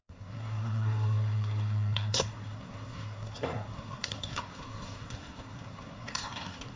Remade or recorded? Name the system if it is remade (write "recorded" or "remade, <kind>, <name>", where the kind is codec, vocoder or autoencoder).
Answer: remade, codec, SNAC